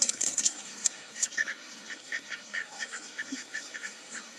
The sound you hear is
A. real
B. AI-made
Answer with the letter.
B